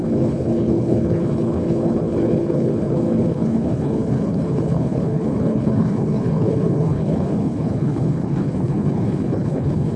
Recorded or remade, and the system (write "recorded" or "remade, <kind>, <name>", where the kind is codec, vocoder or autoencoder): remade, codec, HILCodec